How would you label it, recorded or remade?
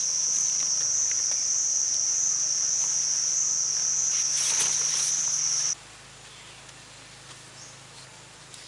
recorded